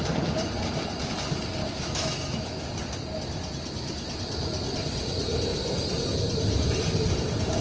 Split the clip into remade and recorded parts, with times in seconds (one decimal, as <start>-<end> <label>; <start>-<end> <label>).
0.0-1.6 recorded; 1.6-2.6 remade; 2.6-7.6 recorded